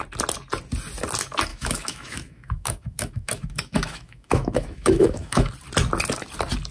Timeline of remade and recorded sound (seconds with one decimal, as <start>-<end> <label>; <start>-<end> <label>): 0.0-1.5 recorded; 1.5-5.5 remade; 5.5-6.7 recorded